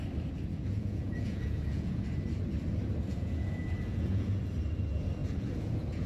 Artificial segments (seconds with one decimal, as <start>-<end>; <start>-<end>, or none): 0.5-2.0; 3.1-4.4; 5.2-6.1